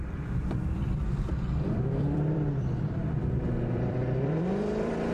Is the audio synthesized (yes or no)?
yes